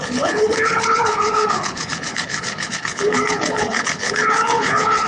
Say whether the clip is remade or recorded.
remade